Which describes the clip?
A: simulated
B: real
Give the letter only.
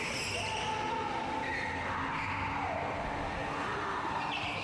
B